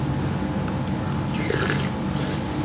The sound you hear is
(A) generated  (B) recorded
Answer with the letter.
B